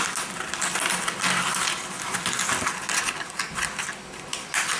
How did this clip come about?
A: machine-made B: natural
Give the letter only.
B